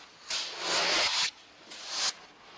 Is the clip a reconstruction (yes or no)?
no